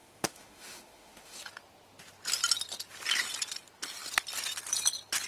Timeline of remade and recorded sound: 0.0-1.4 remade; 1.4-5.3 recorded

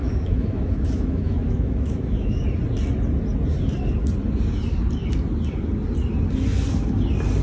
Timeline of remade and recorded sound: 0.0-2.4 remade; 2.4-7.4 recorded

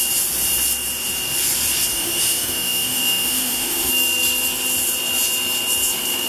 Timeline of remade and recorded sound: 0.0-1.9 recorded; 1.9-3.9 remade; 3.9-6.3 recorded

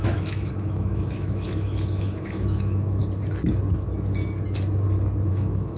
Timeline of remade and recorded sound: 0.0-3.0 remade; 3.0-5.3 recorded; 5.3-5.8 remade